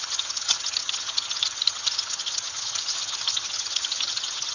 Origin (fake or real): fake